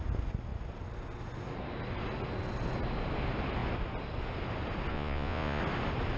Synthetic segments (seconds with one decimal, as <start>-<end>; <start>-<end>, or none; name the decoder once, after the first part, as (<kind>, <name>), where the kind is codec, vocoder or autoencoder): 4.9-5.6 (vocoder, Vocos)